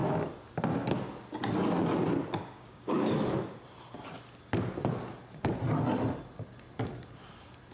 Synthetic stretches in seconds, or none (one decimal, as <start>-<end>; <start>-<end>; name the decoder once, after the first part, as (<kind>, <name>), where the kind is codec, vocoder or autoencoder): 2.4-3.6 (codec, DAC)